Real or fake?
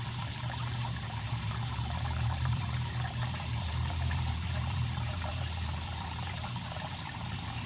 fake